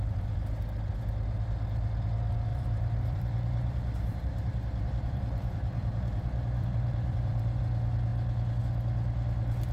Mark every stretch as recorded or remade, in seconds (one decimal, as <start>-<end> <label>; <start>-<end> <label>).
0.0-2.5 recorded; 2.5-7.6 remade; 7.6-9.7 recorded